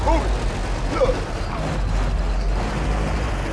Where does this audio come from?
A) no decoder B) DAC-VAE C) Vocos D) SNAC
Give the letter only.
A